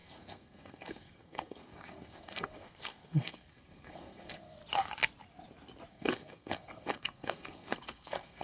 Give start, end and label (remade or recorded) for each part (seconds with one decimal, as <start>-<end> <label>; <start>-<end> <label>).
0.0-4.6 remade; 4.6-5.9 recorded; 5.9-8.4 remade